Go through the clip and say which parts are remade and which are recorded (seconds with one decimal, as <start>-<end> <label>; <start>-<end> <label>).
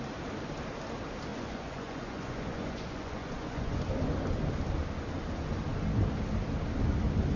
0.0-1.3 recorded; 1.3-3.8 remade; 3.8-7.4 recorded